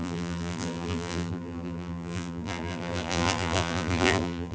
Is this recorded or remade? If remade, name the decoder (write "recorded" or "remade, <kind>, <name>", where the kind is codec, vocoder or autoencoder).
remade, vocoder, BigVGAN v2